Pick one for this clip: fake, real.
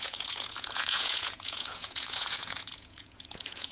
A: fake